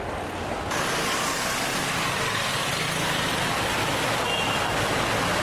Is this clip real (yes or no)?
yes